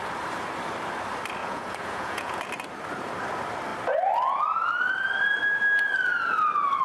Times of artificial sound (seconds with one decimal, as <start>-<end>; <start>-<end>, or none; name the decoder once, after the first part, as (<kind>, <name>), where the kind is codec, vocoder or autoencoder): 1.4-2.4 (vocoder, Vocos)